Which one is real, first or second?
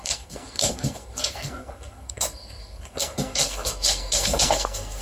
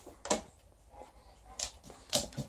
second